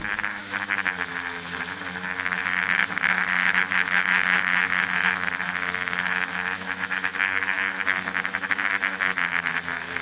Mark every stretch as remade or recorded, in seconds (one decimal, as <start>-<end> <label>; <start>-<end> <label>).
0.0-10.0 remade